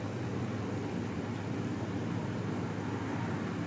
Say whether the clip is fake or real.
real